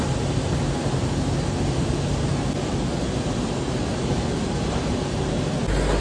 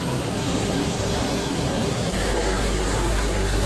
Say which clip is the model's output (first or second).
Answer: second